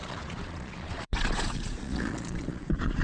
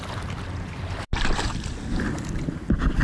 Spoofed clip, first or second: first